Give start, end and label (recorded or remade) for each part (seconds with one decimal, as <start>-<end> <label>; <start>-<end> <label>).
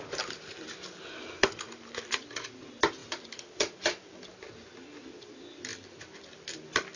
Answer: 0.0-7.0 recorded